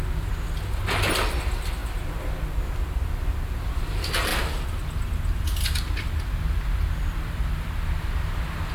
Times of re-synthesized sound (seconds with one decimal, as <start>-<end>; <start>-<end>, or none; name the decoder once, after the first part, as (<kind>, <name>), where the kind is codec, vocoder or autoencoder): none

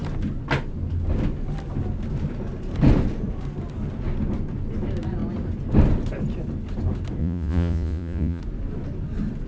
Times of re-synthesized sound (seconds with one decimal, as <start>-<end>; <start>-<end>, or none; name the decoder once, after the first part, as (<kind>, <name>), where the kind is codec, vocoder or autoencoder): 7.2-8.4 (vocoder, Vocos)

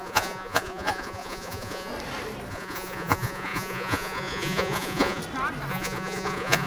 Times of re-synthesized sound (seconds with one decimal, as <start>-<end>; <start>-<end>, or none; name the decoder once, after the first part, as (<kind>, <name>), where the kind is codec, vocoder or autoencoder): 0.0-1.9 (vocoder, Vocos); 2.5-5.2; 5.7-6.7

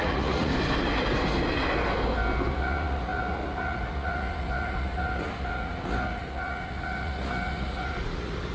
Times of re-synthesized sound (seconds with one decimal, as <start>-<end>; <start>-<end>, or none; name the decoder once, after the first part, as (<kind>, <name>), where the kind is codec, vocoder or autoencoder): 0.0-0.5 (vocoder, Vocos); 2.5-8.5

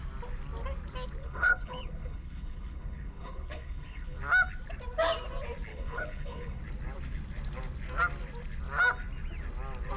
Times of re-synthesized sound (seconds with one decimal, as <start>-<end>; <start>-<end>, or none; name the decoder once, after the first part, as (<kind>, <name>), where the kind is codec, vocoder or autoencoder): 1.2-4.2 (codec, HILCodec); 5.7-6.6